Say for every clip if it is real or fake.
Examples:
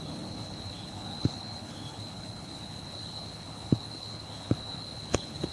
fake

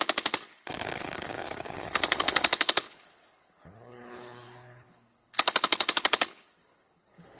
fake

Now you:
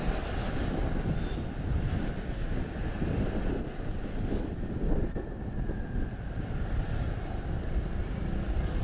real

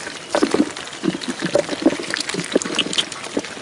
real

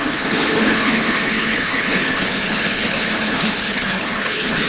fake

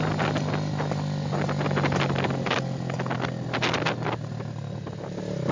real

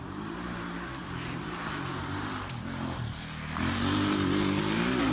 real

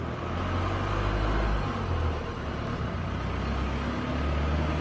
real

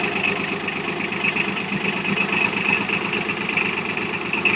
real